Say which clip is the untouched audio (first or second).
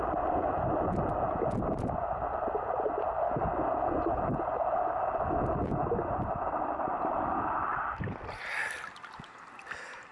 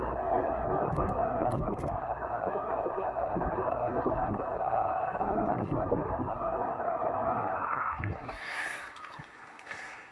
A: first